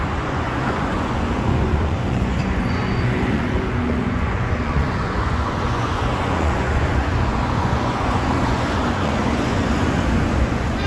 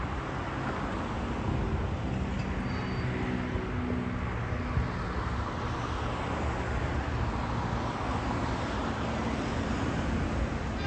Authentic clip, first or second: second